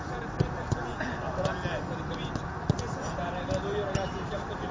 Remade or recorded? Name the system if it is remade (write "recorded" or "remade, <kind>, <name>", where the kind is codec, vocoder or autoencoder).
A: recorded